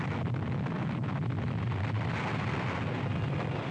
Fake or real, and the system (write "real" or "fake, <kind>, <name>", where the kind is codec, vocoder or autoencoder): real